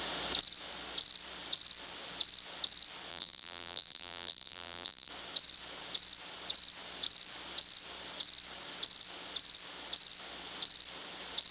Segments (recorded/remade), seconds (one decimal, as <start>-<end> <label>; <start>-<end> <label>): 0.0-3.1 recorded; 3.1-5.1 remade; 5.1-11.5 recorded